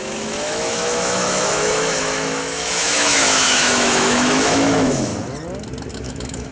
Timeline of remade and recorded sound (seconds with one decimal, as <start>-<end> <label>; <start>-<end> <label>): 0.0-5.1 remade; 5.1-5.9 recorded; 5.9-6.5 remade